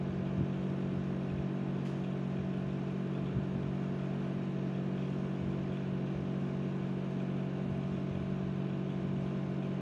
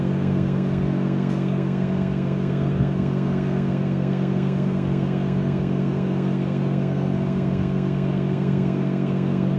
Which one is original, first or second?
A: first